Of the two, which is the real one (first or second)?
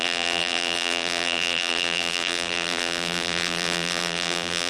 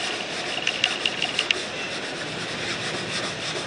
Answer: second